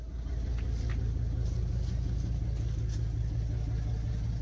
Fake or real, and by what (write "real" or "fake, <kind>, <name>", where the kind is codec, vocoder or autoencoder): real